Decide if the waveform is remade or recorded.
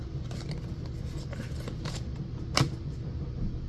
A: recorded